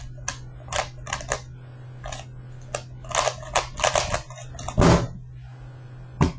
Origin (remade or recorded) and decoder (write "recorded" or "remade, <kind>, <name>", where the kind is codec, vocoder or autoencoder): recorded